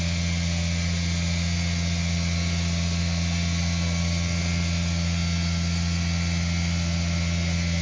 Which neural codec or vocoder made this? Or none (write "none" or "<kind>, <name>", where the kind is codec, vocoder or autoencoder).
none